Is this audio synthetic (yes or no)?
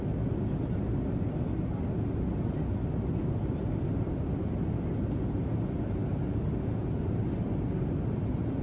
no